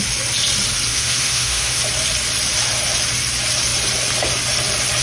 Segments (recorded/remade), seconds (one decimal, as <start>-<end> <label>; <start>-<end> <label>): 0.0-0.9 recorded; 0.9-1.8 remade; 1.8-5.0 recorded